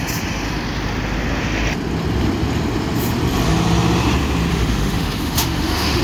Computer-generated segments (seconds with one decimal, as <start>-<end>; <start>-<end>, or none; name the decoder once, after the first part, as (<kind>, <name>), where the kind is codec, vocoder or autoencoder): 4.5-6.0 (autoencoder, DAC-VAE)